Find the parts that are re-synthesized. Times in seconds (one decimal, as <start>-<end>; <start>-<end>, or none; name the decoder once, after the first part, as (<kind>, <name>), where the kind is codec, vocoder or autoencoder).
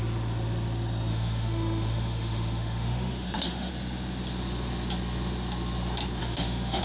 1.1-3.7 (autoencoder, DAC-VAE); 6.2-6.8